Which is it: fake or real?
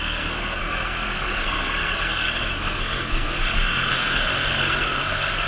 fake